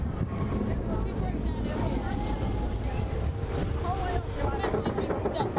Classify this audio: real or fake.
real